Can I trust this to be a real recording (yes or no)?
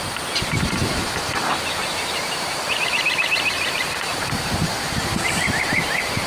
no